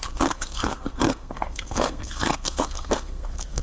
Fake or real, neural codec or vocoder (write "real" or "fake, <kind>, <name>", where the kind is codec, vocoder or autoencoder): fake, codec, SNAC